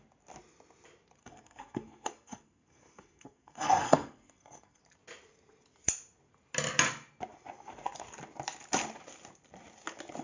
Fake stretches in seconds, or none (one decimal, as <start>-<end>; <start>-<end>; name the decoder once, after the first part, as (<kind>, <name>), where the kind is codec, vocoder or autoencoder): 1.2-4.8 (codec, SNAC)